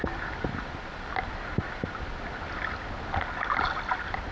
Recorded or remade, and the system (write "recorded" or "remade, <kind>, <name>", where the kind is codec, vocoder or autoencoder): recorded